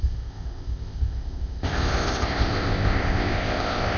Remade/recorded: remade